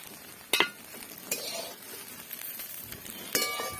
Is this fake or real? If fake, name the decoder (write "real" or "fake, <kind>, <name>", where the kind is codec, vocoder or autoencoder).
real